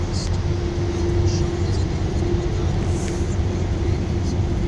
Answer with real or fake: real